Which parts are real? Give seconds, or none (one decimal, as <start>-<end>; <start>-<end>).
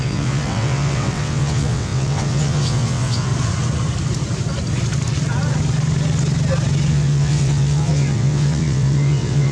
3.3-6.9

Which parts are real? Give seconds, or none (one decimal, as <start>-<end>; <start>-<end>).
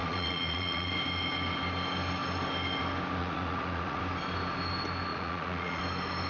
0.9-3.2; 4.0-5.1; 5.8-6.3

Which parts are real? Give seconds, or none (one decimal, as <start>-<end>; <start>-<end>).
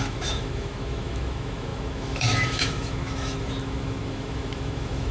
none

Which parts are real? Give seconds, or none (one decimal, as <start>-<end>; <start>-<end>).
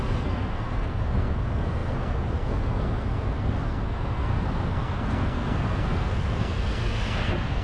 none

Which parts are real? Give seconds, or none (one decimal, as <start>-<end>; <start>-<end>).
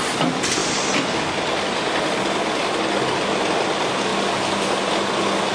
0.0-5.5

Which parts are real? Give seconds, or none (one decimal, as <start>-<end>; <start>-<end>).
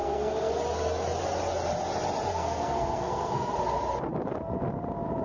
0.5-2.3; 3.5-5.2